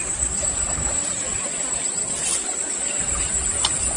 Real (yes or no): yes